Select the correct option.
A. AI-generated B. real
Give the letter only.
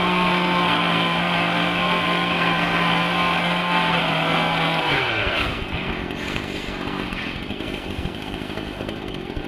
A